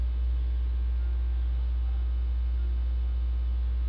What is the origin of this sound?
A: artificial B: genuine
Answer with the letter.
B